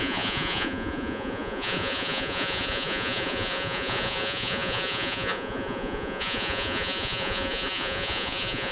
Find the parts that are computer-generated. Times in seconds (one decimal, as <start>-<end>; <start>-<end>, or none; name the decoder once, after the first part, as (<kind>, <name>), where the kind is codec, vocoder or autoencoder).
0.0-8.7 (vocoder, Vocos)